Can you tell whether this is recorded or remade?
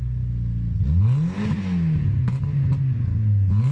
recorded